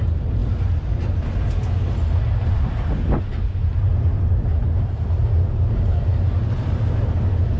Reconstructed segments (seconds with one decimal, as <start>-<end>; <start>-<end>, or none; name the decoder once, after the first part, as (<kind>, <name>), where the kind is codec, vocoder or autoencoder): none